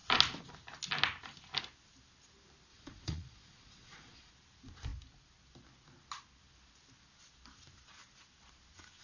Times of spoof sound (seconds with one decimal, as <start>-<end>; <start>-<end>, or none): 2.7-4.3